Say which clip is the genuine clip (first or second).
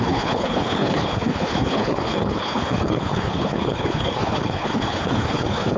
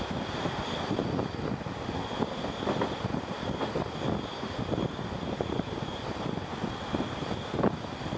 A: second